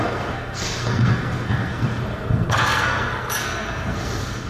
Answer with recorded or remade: remade